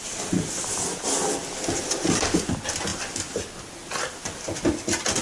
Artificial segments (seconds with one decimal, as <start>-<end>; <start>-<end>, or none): 2.9-3.7